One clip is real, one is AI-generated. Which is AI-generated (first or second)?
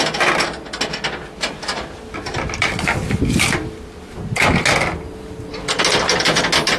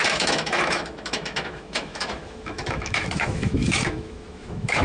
second